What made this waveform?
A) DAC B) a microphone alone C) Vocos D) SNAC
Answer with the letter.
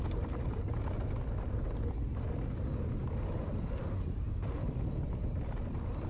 B